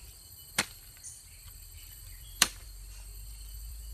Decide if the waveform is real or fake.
fake